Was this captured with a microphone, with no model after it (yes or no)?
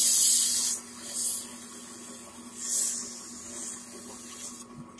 yes